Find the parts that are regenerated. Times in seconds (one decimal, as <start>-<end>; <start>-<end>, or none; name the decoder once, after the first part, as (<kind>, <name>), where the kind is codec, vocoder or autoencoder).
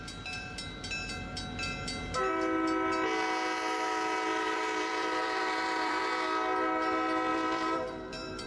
4.3-6.1 (vocoder, BigVGAN v2); 7.3-8.5